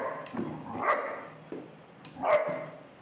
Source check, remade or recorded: recorded